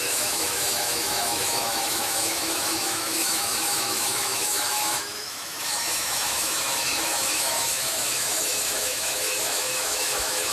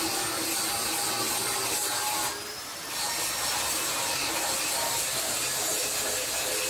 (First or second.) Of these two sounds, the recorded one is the second